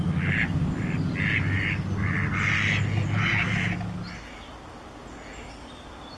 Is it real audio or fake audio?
real